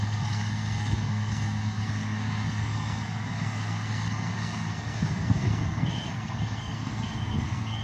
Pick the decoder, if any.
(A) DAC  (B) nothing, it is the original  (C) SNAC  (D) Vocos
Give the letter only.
C